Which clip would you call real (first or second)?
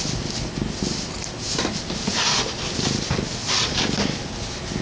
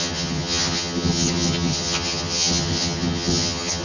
first